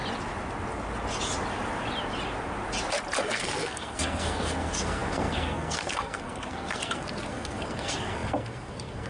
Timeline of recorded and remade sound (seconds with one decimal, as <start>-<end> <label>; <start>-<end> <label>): 0.0-3.2 recorded; 3.2-9.1 remade